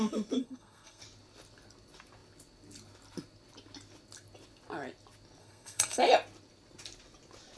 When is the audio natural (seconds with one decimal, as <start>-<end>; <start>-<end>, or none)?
0.0-0.4; 1.0-5.4; 6.1-7.6